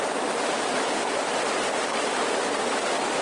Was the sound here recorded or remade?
recorded